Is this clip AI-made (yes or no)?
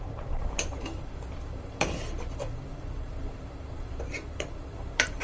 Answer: yes